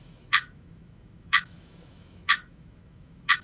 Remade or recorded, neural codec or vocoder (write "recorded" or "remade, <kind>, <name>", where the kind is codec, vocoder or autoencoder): remade, autoencoder, DAC-VAE